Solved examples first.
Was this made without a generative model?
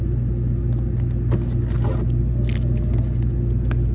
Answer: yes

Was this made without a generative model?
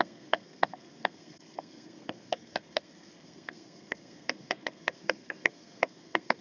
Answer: no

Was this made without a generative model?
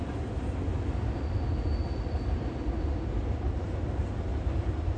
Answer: yes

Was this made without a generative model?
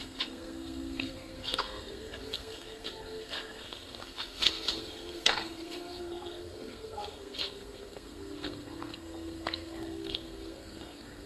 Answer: no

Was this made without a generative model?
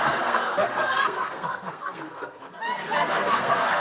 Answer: no